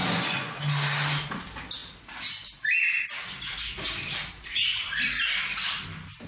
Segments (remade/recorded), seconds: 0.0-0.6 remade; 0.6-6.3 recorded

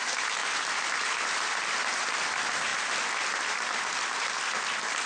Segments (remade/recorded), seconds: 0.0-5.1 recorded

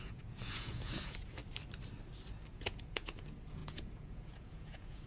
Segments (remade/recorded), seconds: 0.0-1.4 remade; 1.4-2.5 recorded; 2.5-5.1 remade

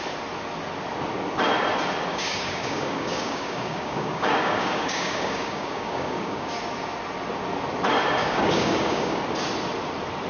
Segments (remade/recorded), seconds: 0.0-2.1 recorded; 2.1-6.6 remade; 6.6-8.2 recorded; 8.2-9.2 remade; 9.2-10.3 recorded

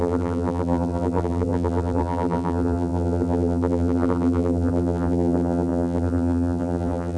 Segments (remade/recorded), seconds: 0.0-7.2 remade

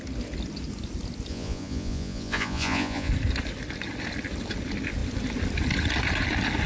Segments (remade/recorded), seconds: 0.0-1.3 recorded; 1.3-3.1 remade; 3.1-6.7 recorded

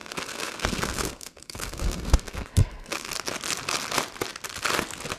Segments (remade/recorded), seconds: 0.0-3.1 remade; 3.1-5.2 recorded